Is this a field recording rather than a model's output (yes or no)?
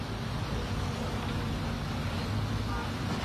yes